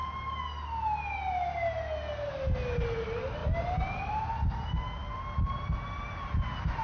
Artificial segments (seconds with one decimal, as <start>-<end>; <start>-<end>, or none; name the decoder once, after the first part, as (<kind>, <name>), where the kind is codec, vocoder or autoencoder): none